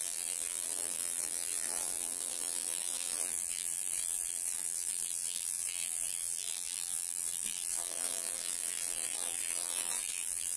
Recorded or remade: remade